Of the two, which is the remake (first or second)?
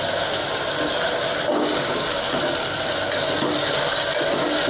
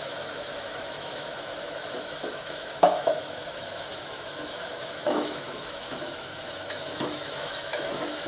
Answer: second